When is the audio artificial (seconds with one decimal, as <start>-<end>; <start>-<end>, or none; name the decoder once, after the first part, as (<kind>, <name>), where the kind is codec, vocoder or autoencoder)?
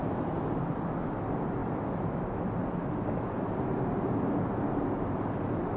none